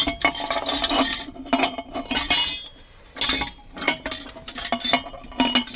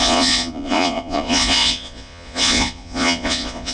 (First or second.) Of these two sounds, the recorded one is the first